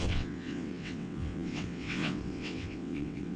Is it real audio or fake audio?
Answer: fake